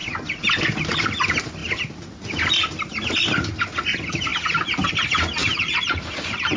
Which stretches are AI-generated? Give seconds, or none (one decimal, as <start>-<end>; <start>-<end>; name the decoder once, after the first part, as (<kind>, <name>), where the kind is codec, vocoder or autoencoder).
5.4-6.6 (vocoder, BigVGAN v2)